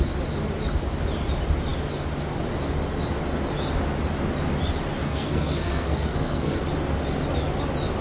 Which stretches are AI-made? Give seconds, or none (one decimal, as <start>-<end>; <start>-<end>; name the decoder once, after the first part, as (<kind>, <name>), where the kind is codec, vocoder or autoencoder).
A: 5.0-6.6 (codec, SNAC)

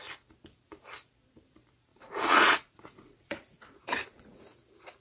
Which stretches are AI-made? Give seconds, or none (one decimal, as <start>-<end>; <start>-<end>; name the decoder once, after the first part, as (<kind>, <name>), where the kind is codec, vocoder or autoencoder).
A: 1.9-4.6 (vocoder, Vocos)

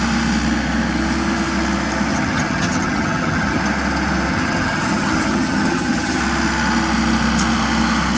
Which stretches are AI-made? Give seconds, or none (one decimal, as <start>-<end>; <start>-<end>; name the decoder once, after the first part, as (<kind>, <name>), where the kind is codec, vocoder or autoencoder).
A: 2.1-3.6 (vocoder, HiFi-GAN); 4.3-6.2

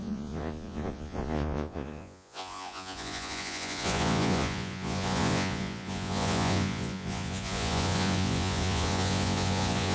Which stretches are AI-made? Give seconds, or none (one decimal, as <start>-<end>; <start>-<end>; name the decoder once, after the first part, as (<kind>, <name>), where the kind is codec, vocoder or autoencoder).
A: 0.0-9.9 (vocoder, Vocos)

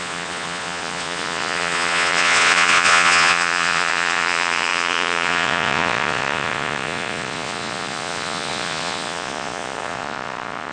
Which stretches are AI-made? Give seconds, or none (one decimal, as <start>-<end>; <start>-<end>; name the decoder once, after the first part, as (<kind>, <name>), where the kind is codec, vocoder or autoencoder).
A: 0.0-10.7 (vocoder, Vocos)

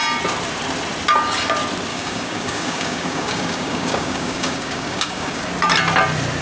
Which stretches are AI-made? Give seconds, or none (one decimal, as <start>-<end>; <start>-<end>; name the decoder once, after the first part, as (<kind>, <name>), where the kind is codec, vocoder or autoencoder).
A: 1.9-5.4 (codec, DAC)

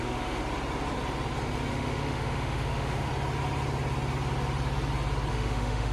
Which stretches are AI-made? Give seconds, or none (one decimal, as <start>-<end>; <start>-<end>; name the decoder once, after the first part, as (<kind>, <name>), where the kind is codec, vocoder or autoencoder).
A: 0.0-0.4 (autoencoder, DAC-VAE); 1.7-3.1; 5.3-5.9